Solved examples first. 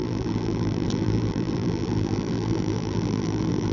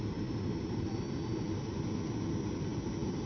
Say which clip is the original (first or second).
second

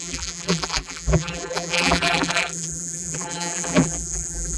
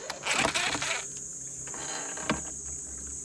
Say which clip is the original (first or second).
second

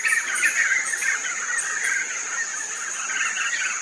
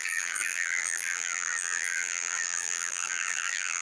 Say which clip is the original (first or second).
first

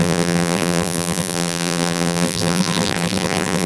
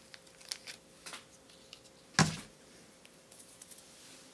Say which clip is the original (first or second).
second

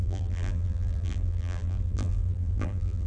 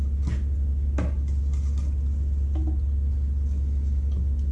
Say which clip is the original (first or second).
second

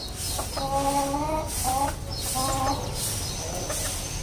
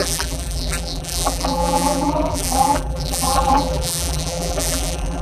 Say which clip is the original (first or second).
first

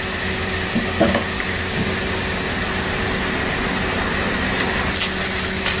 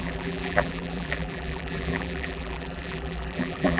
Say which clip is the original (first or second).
first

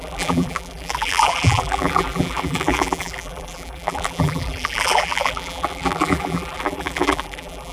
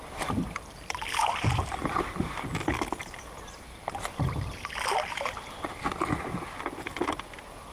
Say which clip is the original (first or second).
second